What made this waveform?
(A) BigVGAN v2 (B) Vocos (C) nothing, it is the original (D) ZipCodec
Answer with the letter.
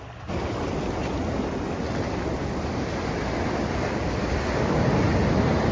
C